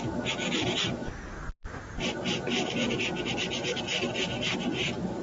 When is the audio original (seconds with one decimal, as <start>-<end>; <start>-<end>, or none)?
0.0-5.2